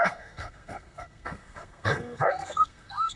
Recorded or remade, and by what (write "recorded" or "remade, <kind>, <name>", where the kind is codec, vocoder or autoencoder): remade, codec, SNAC